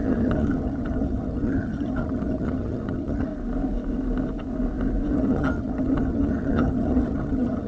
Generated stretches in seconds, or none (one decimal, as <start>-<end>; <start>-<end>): 0.0-3.3; 5.1-7.7